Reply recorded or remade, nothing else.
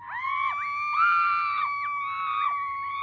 recorded